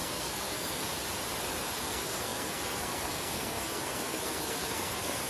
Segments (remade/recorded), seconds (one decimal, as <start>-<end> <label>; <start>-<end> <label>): 0.0-0.9 remade; 0.9-1.6 recorded; 1.6-5.3 remade